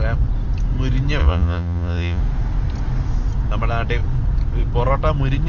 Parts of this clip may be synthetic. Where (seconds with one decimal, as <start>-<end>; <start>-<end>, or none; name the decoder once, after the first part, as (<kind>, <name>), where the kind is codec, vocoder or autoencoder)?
1.2-2.2 (vocoder, Vocos)